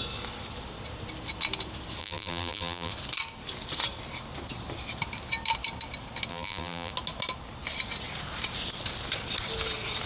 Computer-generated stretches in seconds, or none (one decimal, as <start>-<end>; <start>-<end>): 2.0-2.9; 6.3-6.9